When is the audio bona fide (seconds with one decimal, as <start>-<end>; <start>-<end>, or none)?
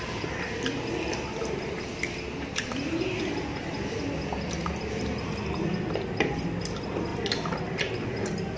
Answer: 0.0-8.6